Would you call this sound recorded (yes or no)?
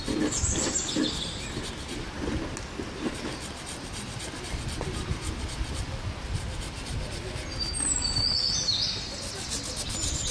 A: yes